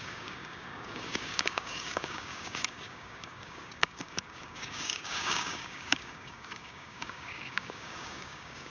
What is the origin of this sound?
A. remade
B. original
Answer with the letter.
A